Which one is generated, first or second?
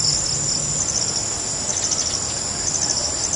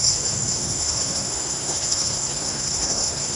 second